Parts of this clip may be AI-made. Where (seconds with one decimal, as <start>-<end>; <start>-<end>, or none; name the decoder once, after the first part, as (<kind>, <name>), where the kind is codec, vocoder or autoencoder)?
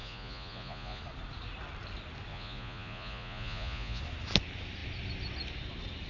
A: 0.0-1.0 (vocoder, Vocos); 2.3-4.0